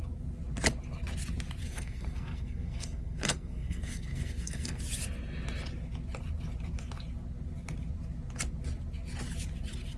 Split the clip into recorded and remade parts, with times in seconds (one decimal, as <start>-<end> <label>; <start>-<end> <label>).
0.0-1.6 recorded; 1.6-4.8 remade; 4.8-10.0 recorded